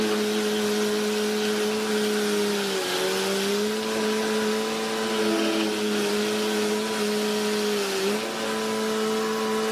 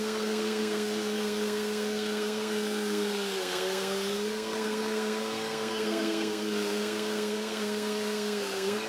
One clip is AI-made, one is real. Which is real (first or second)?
first